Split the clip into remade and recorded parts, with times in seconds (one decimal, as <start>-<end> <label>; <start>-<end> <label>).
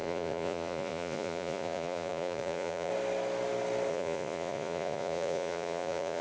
0.0-2.9 remade; 2.9-3.9 recorded; 3.9-6.2 remade